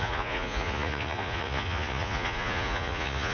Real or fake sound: fake